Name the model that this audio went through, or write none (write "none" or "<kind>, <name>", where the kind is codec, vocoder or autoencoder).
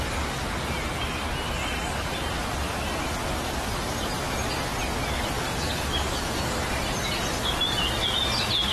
none